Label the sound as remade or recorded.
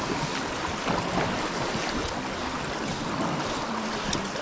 recorded